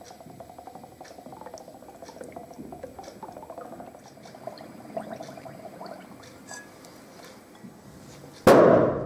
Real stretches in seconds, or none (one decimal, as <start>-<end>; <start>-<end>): 0.0-9.1